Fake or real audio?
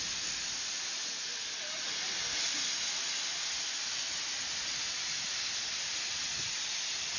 real